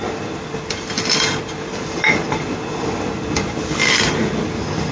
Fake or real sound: real